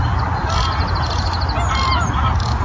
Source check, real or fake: real